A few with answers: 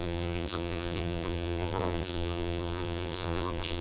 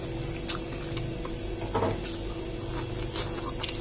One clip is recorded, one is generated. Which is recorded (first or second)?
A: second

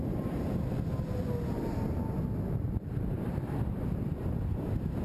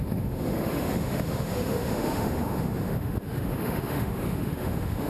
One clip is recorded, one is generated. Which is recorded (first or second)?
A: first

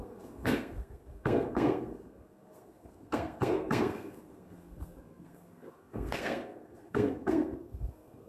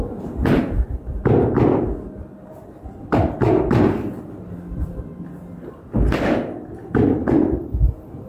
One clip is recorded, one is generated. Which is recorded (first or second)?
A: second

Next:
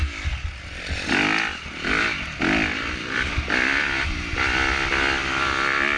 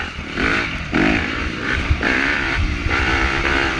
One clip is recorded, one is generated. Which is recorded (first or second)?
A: first